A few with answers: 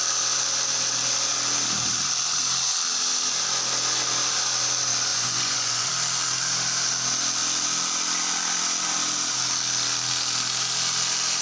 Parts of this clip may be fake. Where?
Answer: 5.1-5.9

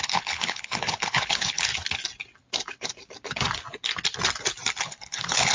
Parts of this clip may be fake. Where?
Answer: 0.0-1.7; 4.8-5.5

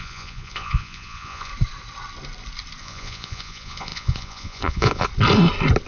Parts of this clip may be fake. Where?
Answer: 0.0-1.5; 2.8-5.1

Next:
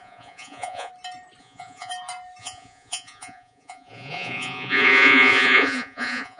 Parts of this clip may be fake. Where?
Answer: 0.0-0.9; 1.4-1.9; 2.4-6.4